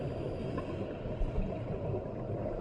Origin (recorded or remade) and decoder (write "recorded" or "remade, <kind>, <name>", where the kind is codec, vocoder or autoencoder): recorded